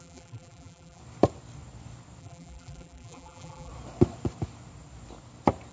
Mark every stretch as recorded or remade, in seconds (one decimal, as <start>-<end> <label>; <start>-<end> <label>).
0.0-1.0 remade; 1.0-2.2 recorded; 2.2-3.7 remade; 3.7-5.7 recorded